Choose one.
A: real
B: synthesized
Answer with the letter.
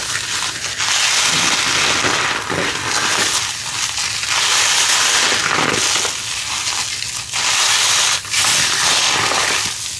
A